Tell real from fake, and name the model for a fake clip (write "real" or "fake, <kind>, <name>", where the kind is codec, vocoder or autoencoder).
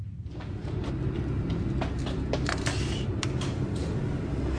real